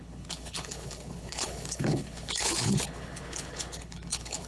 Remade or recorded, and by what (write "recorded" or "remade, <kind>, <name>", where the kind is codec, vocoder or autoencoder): remade, codec, HILCodec